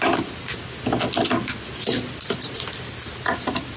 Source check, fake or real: real